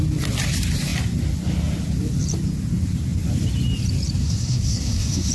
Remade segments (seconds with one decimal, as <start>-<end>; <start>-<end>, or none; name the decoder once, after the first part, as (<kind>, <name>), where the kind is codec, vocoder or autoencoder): 4.2-5.3 (codec, SNAC)